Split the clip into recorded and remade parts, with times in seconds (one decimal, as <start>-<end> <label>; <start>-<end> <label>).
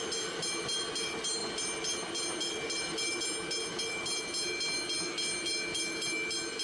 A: 0.0-6.6 recorded